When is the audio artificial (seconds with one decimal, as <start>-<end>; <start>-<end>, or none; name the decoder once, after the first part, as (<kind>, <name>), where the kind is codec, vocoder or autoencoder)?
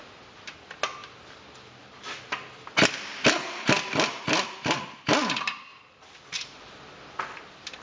none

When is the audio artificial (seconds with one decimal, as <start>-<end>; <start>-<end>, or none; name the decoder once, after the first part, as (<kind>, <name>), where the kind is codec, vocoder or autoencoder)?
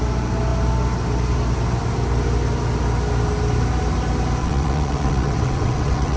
4.4-6.2 (vocoder, WaveNeXt)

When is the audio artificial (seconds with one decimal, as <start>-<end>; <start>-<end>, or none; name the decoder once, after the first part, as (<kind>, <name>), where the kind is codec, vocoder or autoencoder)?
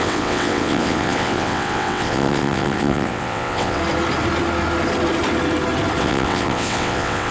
0.0-3.8 (vocoder, WaveNeXt); 6.0-7.3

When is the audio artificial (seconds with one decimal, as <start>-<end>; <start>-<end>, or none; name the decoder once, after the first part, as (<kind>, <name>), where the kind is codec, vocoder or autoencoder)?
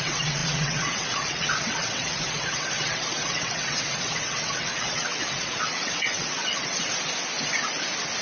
0.0-6.9 (vocoder, WaveNeXt)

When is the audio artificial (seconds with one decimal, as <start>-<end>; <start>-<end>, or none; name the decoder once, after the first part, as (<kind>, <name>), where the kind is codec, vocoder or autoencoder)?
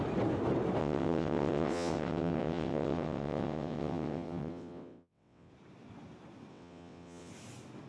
0.8-5.5 (vocoder, WaveNeXt); 6.5-7.3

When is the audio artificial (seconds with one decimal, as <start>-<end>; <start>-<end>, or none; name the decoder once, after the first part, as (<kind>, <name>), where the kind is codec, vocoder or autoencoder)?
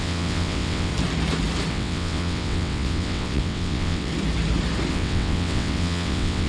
0.0-0.9 (vocoder, WaveNeXt); 1.7-4.1; 4.9-6.5